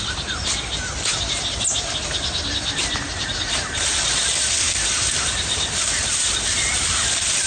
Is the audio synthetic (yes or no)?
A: no